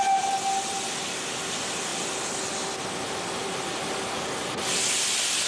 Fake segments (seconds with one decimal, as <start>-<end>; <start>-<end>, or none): none